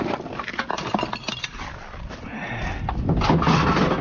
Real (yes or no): yes